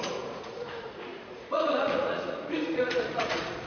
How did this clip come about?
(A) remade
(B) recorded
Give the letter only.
A